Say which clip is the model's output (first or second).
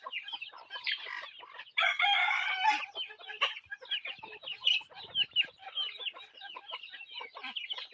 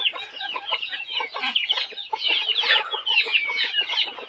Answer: second